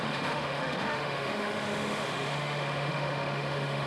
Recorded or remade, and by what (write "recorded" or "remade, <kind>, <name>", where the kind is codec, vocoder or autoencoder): remade, autoencoder, DAC-VAE